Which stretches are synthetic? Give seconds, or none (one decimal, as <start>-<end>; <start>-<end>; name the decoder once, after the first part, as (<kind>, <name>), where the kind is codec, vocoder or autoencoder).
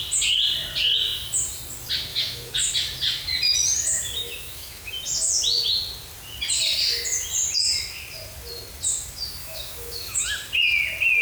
2.1-2.7 (autoencoder, DAC-VAE); 4.2-4.9; 9.4-10.2